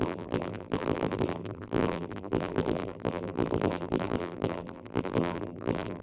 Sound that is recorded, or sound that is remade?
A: remade